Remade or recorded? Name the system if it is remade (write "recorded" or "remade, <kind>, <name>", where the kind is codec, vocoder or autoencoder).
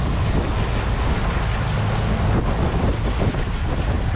recorded